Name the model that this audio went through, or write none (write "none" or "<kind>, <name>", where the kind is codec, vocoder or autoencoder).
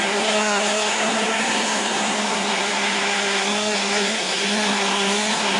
codec, SNAC